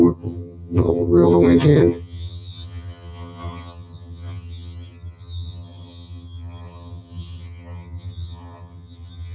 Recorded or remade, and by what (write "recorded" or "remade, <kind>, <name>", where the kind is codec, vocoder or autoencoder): remade, vocoder, HiFi-GAN